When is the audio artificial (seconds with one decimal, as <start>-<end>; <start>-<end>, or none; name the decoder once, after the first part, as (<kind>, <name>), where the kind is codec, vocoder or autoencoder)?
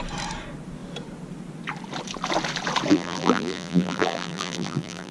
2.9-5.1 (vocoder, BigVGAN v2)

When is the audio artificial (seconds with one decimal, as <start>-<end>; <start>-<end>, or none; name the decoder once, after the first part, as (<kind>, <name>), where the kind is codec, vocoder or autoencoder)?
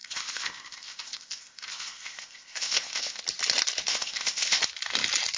0.0-3.2 (codec, ZipCodec); 3.9-4.6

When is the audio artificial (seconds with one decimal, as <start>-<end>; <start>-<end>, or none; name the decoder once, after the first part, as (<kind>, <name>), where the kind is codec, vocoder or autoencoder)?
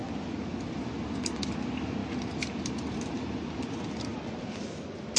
none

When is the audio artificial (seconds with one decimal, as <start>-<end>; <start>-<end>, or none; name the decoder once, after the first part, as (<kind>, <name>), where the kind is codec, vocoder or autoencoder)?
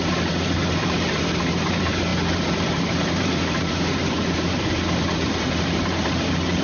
0.0-2.1 (vocoder, BigVGAN v2); 2.8-6.6